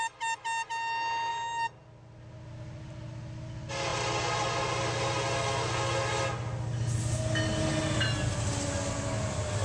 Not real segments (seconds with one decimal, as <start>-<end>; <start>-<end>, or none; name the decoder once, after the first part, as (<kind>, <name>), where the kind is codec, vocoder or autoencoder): none